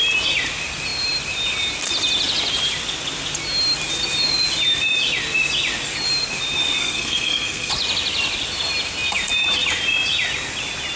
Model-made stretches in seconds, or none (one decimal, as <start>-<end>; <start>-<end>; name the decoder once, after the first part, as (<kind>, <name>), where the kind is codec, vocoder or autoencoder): 6.8-7.7 (codec, SNAC)